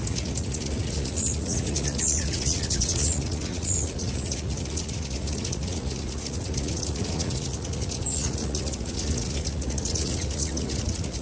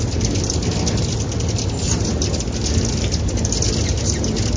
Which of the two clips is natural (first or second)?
second